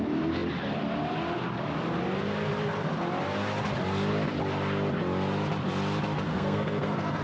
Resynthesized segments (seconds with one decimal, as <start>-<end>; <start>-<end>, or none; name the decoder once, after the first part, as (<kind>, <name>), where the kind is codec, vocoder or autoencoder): 6.3-7.2 (codec, SNAC)